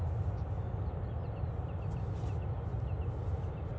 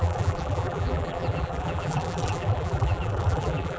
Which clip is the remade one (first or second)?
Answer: second